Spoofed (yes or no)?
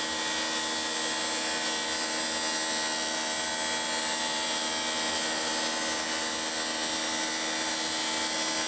no